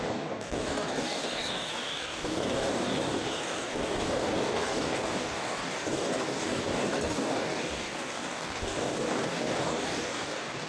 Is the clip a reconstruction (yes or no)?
yes